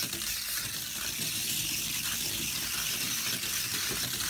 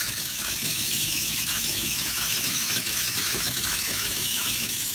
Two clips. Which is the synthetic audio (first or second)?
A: second